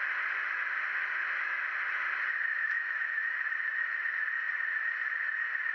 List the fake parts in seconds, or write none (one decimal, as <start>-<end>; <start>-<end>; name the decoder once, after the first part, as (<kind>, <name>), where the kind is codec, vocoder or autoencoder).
1.0-1.6 (autoencoder, DAC-VAE); 2.5-3.2